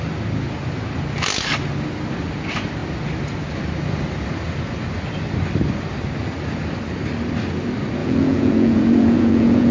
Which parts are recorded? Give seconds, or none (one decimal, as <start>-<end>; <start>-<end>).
0.0-8.0